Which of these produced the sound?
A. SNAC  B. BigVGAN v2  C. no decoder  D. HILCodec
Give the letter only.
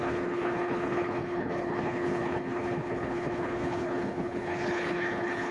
D